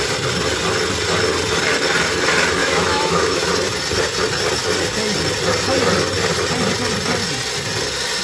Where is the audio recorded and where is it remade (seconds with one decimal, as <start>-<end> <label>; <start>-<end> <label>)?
0.0-2.6 recorded; 2.6-3.5 remade; 3.5-8.2 recorded

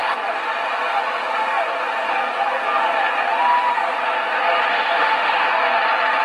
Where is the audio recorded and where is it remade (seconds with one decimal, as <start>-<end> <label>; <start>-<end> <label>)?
0.0-4.7 recorded; 4.7-5.5 remade; 5.5-6.2 recorded

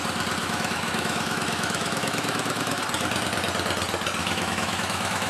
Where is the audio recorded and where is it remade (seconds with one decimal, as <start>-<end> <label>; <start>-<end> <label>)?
0.0-0.4 recorded; 0.4-2.8 remade; 2.8-4.2 recorded; 4.2-5.3 remade

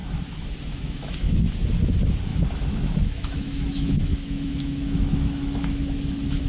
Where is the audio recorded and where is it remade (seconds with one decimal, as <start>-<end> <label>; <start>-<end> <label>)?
0.0-1.5 remade; 1.5-2.3 recorded; 2.3-6.5 remade

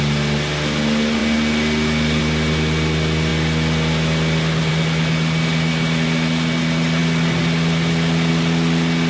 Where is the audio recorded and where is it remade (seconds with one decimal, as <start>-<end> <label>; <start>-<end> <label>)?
0.0-9.1 recorded

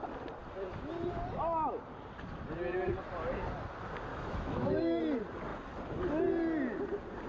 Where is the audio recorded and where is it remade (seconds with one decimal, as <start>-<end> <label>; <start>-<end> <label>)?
0.0-4.1 recorded; 4.1-5.0 remade; 5.0-7.3 recorded

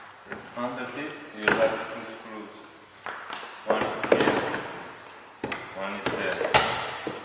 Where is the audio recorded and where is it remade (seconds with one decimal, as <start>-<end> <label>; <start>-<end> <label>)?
0.0-7.2 recorded